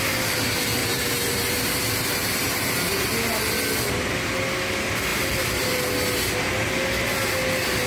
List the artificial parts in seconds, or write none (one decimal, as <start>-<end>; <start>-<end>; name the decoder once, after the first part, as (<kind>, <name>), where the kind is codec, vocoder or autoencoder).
0.8-2.9 (vocoder, BigVGAN v2); 5.1-5.9